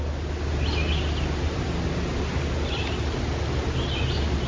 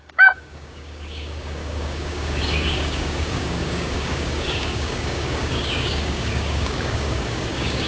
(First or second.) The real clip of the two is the first